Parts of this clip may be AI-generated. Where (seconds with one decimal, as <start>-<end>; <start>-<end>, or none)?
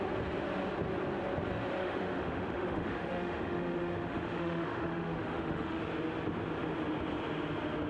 1.8-5.8